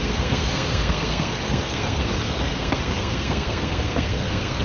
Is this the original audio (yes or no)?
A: no